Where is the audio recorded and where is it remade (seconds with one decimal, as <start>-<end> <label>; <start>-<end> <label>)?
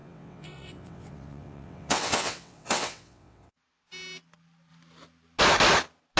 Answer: 0.0-3.6 remade; 3.6-6.2 recorded